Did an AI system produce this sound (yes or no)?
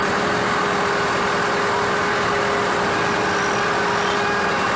no